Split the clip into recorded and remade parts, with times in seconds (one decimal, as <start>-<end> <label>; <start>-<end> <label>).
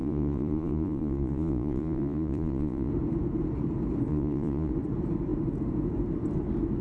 0.0-2.9 remade; 2.9-4.1 recorded; 4.1-4.7 remade; 4.7-6.8 recorded